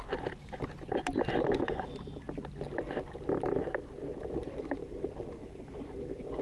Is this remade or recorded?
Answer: recorded